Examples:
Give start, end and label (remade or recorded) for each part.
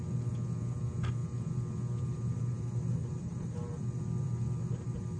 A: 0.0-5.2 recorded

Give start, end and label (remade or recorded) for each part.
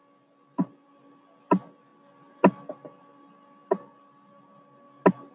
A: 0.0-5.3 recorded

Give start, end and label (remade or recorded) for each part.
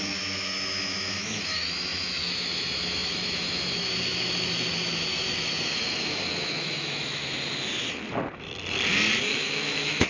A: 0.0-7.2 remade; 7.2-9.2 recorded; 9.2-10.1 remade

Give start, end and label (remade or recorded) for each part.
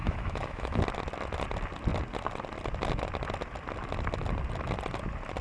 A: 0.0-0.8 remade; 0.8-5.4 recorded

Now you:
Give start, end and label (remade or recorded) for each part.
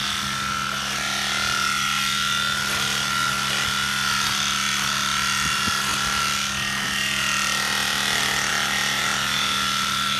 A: 0.0-10.2 recorded